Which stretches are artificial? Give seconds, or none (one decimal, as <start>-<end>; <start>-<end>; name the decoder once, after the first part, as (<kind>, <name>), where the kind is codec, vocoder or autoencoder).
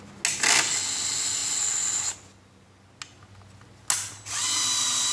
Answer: none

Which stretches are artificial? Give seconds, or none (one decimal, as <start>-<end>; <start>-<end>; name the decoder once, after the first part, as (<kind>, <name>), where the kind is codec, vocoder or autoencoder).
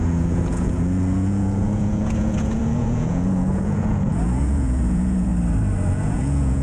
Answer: 0.0-5.3 (vocoder, Vocos); 5.9-6.6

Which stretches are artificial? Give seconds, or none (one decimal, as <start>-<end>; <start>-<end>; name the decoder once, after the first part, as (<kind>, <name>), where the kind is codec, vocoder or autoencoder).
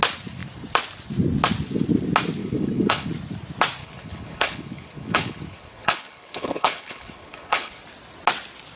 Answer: 2.4-3.1 (codec, HILCodec); 3.8-7.8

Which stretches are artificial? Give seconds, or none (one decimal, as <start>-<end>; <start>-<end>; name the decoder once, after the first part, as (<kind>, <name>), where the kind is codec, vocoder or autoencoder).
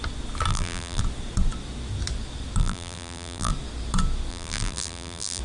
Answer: 0.5-1.0 (vocoder, BigVGAN v2); 2.6-3.5; 4.3-5.4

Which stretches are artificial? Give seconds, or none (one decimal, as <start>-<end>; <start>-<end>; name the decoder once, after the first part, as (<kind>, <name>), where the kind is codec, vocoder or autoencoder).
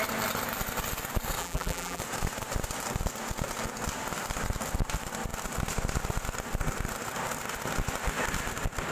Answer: 1.4-2.0 (vocoder, BigVGAN v2)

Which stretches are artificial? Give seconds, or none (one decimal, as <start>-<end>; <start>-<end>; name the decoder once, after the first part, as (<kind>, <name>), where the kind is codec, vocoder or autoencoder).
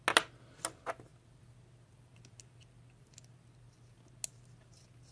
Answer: none